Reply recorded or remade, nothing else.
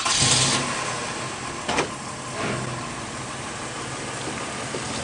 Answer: recorded